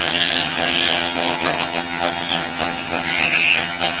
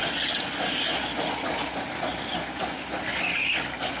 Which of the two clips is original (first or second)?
second